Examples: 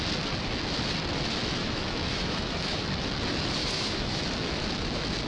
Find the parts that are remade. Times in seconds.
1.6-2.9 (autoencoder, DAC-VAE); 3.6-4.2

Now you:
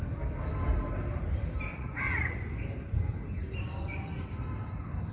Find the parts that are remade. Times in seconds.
1.7-2.4 (vocoder, Vocos)

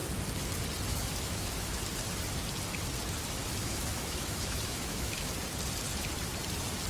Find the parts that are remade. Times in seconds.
0.9-1.8 (autoencoder, DAC-VAE); 3.4-5.3

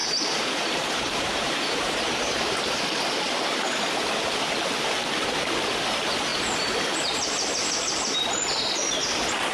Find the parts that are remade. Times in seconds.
0.0-3.0 (vocoder, BigVGAN v2)

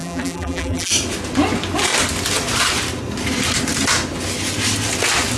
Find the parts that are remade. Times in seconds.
0.0-0.9 (vocoder, BigVGAN v2)

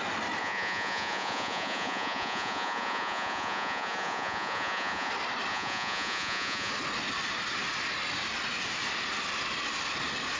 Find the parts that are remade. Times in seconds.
0.4-5.1 (vocoder, Vocos); 5.5-6.7

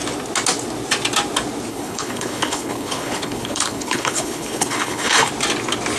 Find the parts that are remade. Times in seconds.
1.7-5.3 (codec, HILCodec)

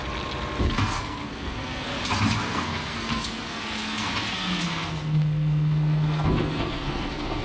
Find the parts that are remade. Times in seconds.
0.6-1.9 (codec, SNAC); 2.4-7.4